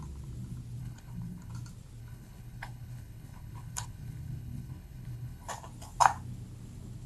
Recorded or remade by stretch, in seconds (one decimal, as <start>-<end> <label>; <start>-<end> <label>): 0.0-0.8 recorded; 0.8-1.5 remade; 1.5-2.0 recorded; 2.0-5.5 remade; 5.5-7.1 recorded